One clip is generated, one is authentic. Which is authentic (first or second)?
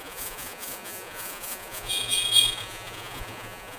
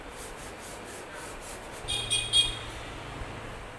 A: second